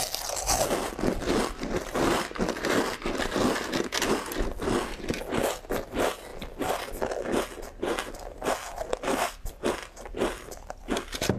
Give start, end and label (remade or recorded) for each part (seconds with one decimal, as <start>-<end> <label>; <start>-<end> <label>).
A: 0.0-11.4 recorded

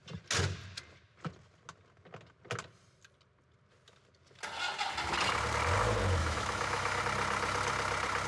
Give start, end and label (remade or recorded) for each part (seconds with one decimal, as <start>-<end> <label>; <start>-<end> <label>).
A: 0.0-6.2 recorded; 6.2-7.0 remade; 7.0-8.3 recorded

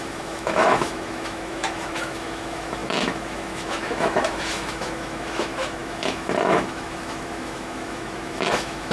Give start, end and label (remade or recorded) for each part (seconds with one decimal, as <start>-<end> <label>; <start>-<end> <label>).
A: 0.0-8.9 remade

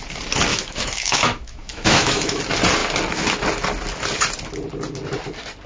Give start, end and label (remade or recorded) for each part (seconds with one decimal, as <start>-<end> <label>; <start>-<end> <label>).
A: 0.0-0.5 recorded; 0.5-2.4 remade; 2.4-5.7 recorded

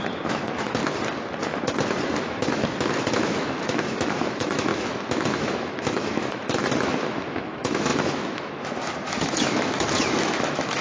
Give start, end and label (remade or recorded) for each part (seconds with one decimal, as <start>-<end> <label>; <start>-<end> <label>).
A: 0.0-0.8 remade; 0.8-2.2 recorded; 2.2-10.8 remade

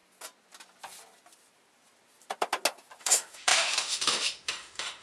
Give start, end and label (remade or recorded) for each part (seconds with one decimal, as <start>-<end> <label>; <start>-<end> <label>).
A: 0.0-3.0 recorded; 3.0-5.0 remade

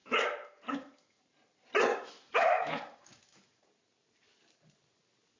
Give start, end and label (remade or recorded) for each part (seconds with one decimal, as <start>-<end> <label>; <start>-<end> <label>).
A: 0.0-1.2 remade; 1.2-1.9 recorded; 1.9-3.6 remade; 3.6-5.4 recorded